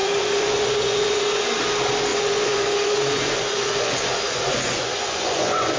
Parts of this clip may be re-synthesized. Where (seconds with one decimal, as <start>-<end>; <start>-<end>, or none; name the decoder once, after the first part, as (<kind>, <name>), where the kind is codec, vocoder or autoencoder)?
0.0-1.4 (vocoder, Vocos); 2.1-5.8